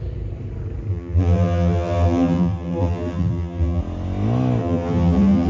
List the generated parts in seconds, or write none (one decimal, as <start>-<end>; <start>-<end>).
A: 0.9-3.8; 4.6-5.5